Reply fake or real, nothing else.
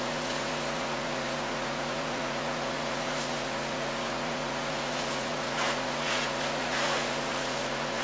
fake